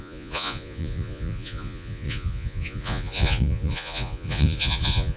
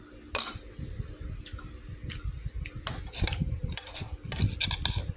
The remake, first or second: first